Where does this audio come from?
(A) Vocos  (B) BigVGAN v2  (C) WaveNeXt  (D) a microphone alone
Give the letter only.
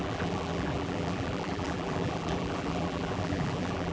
B